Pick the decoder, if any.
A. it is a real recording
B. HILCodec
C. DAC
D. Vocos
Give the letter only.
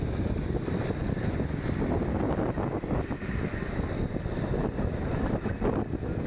A